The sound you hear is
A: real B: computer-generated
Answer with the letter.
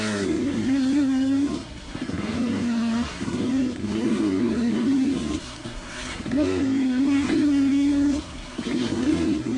B